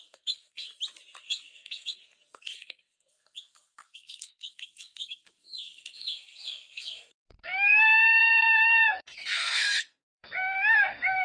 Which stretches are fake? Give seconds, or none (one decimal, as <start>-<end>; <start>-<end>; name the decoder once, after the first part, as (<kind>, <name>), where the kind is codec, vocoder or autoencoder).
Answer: 0.0-0.7 (codec, SNAC); 1.2-11.2

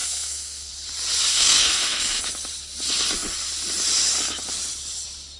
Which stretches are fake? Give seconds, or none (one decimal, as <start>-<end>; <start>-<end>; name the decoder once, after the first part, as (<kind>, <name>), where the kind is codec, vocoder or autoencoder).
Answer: 0.0-0.7 (codec, SNAC); 1.3-2.2

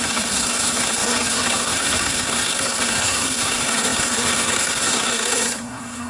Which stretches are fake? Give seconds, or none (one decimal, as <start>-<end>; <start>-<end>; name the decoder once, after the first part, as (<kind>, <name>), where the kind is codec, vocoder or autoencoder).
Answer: 0.0-6.1 (codec, SNAC)

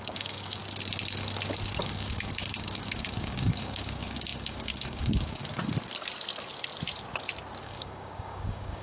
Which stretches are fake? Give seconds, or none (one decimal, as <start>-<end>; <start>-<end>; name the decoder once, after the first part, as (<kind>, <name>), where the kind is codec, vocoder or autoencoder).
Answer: 0.0-0.6 (codec, DAC); 1.8-5.4; 7.6-8.8

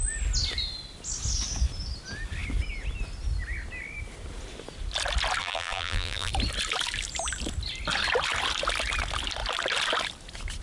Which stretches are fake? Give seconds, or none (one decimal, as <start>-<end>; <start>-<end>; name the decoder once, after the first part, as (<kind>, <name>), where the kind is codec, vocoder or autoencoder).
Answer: 5.4-6.3 (vocoder, BigVGAN v2)

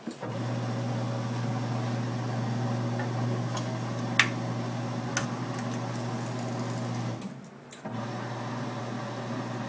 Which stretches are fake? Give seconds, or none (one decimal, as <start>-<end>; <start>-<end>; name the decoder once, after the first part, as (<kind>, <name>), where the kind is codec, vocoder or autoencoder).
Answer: none